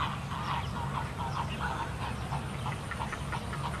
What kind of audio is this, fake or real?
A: real